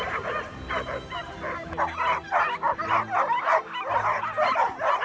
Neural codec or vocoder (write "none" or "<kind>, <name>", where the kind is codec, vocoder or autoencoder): none